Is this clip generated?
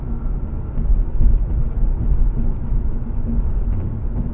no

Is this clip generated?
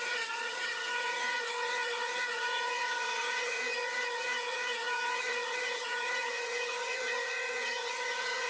yes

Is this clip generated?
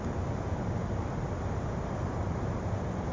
no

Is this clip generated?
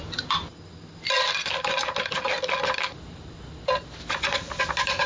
no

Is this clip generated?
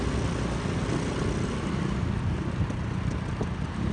no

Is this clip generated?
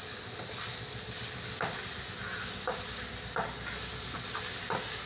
no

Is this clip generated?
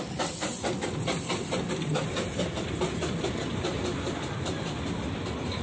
yes